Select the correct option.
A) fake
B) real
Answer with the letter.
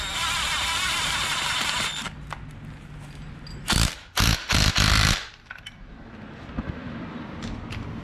B